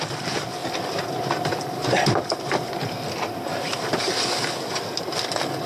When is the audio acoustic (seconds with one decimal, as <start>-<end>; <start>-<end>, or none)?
0.0-0.6; 4.0-5.7